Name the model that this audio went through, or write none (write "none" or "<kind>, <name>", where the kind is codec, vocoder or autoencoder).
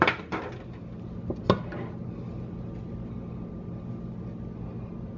none